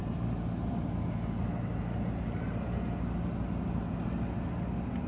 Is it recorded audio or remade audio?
recorded